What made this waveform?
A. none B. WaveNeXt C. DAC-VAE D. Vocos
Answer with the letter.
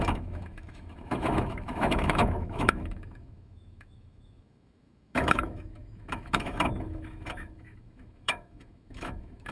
C